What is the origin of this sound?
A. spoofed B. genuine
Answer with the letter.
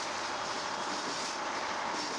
B